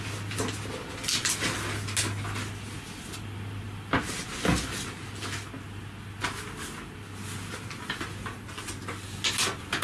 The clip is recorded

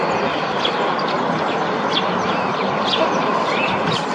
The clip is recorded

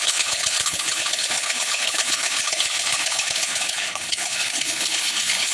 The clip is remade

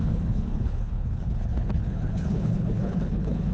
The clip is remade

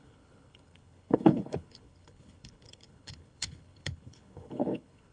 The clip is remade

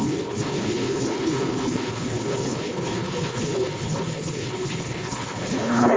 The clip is remade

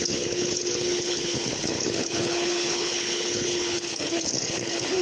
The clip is remade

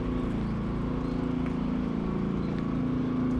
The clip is recorded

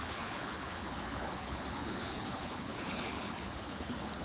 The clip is remade